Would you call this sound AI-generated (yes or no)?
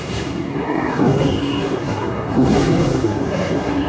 yes